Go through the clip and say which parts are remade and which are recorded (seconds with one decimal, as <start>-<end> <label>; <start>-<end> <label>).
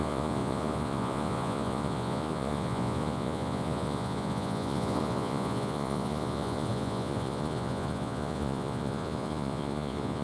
0.0-10.2 remade